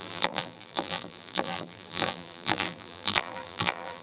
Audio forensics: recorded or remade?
remade